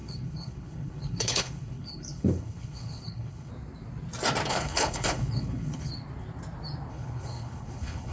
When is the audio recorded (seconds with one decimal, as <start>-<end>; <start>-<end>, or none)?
3.5-4.5; 5.9-6.9